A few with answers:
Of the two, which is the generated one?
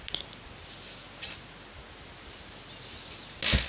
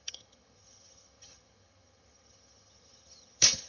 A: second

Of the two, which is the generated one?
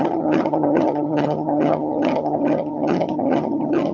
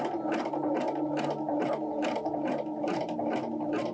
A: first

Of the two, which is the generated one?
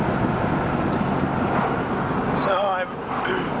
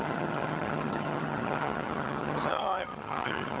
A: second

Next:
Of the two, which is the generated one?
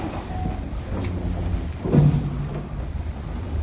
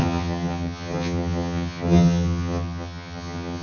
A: second